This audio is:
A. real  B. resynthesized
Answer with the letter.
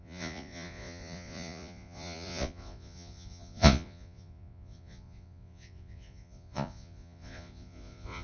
B